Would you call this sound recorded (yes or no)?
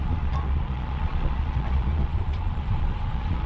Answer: no